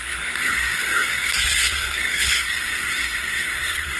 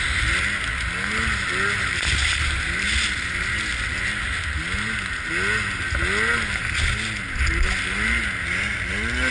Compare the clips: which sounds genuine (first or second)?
second